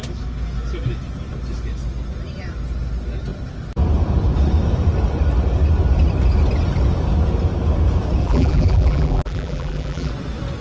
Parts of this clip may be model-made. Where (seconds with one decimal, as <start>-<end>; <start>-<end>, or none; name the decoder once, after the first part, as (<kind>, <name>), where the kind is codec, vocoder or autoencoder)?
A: 8.2-10.1 (vocoder, BigVGAN v2)